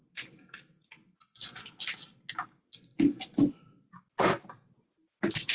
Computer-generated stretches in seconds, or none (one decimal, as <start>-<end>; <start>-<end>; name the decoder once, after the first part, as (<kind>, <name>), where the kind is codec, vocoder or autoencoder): none